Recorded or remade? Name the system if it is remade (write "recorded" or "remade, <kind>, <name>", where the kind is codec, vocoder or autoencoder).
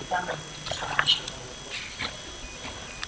recorded